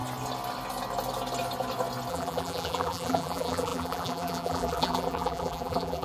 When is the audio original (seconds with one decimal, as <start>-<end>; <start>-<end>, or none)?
0.0-2.1